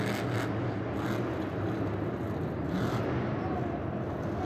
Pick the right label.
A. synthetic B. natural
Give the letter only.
B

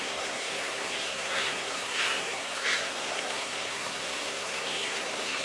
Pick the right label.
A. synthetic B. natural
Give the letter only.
A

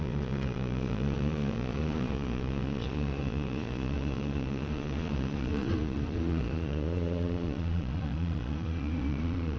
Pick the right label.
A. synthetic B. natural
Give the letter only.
A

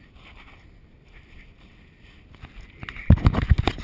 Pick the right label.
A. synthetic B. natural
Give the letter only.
B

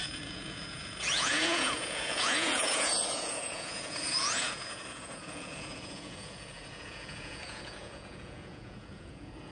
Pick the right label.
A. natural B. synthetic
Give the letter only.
B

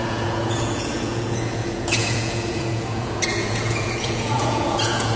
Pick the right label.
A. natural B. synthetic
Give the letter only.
B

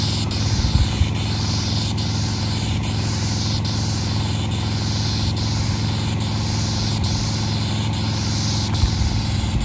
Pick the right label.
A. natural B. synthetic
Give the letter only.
A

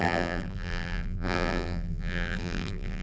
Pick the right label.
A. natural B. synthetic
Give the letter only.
B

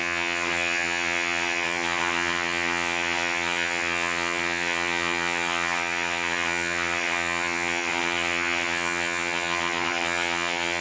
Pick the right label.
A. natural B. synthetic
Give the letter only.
B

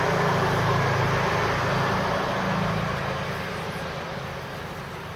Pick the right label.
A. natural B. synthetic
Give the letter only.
A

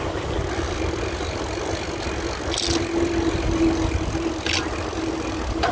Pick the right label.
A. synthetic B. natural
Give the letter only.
B